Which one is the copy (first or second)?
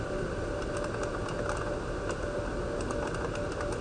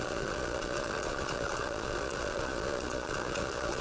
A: second